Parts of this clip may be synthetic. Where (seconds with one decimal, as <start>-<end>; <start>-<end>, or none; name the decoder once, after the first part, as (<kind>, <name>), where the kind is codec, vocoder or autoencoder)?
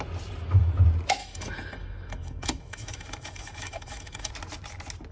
1.2-4.3 (autoencoder, DAC-VAE)